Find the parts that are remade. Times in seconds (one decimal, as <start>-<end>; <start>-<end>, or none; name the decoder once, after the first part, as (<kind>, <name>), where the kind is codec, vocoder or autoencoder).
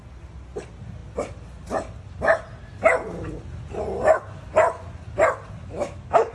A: 5.6-6.3 (autoencoder, DAC-VAE)